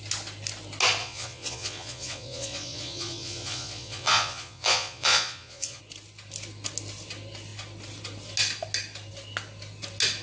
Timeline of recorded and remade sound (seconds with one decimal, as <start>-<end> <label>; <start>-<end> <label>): 0.0-1.0 recorded; 1.0-5.8 remade; 5.8-10.2 recorded